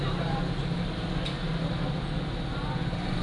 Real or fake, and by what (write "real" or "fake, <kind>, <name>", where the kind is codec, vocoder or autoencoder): real